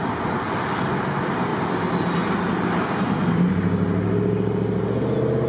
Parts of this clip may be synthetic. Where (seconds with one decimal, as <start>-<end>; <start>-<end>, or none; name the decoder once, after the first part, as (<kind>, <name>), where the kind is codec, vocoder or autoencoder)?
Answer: none